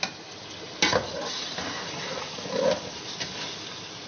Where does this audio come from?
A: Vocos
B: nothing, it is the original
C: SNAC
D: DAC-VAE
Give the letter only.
B